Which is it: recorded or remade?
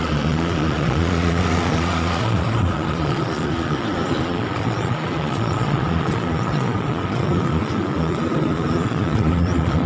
remade